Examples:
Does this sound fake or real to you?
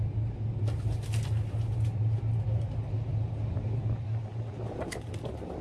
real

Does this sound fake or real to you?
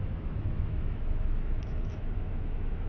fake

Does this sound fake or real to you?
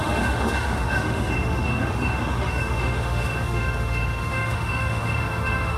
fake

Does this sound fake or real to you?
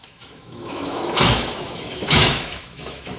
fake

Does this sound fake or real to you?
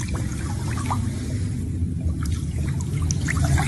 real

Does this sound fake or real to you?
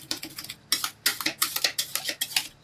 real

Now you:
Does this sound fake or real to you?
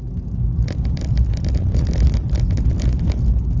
real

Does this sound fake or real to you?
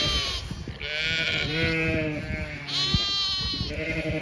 real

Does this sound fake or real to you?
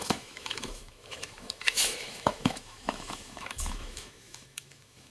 fake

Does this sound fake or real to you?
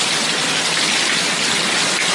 real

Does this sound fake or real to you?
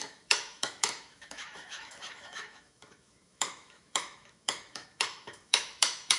fake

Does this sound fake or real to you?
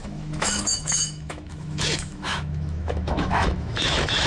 fake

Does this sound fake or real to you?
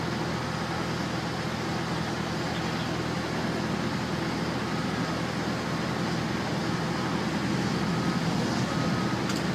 real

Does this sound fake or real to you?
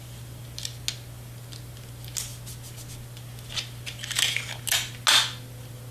real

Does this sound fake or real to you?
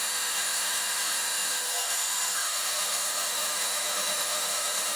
fake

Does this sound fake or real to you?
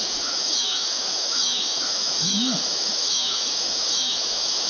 fake